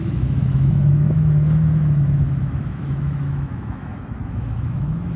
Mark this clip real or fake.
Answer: fake